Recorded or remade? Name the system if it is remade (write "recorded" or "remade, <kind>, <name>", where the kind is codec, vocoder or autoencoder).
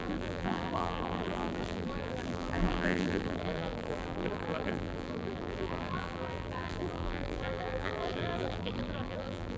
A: remade, vocoder, BigVGAN v2